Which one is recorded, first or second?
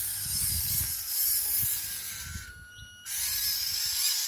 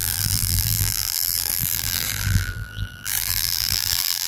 first